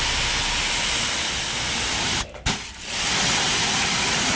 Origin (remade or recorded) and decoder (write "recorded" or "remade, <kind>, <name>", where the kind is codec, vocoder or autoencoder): recorded